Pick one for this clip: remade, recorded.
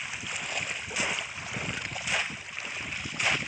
recorded